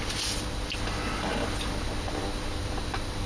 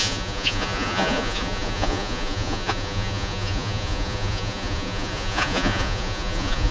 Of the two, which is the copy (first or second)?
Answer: second